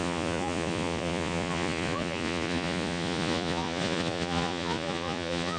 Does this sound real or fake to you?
fake